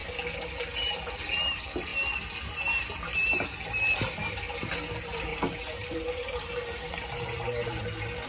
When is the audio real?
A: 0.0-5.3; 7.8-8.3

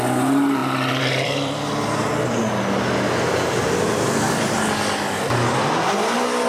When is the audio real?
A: 0.0-0.6; 2.1-6.5